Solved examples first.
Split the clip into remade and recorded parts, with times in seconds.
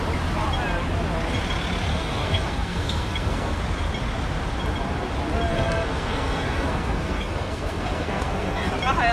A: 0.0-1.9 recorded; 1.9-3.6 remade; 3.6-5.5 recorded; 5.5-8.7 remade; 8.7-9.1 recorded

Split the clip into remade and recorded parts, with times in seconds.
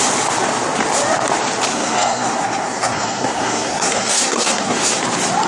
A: 0.0-1.7 recorded; 1.7-5.0 remade; 5.0-5.5 recorded